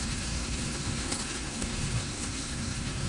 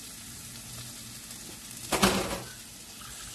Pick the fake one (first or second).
first